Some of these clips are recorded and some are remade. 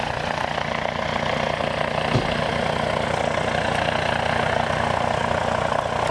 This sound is recorded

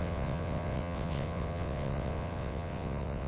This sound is remade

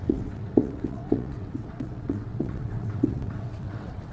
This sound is remade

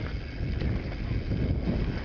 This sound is recorded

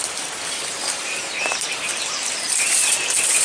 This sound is recorded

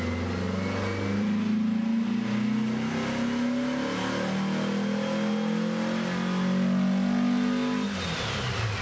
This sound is recorded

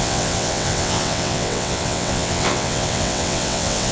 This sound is remade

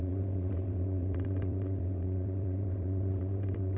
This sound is remade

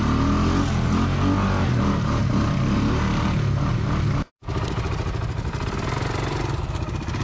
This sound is recorded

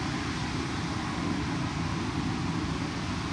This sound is recorded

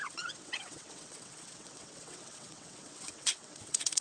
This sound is remade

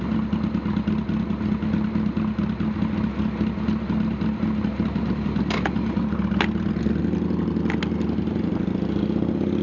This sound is recorded